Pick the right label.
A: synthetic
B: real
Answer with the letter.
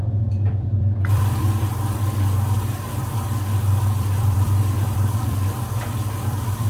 A